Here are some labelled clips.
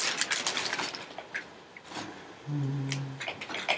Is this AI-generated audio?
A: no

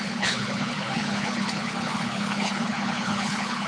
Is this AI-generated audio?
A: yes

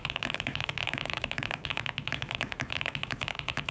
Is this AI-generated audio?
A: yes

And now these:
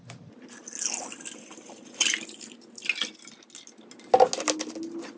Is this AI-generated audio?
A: no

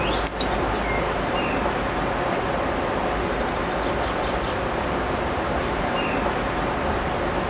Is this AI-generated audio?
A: no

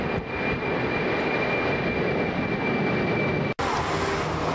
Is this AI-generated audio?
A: no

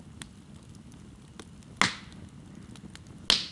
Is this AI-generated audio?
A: no